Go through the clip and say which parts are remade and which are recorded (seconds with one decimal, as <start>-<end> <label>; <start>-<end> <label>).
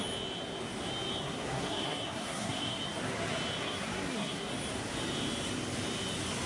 0.0-1.2 recorded; 1.2-2.8 remade; 2.8-3.6 recorded; 3.6-4.5 remade; 4.5-6.5 recorded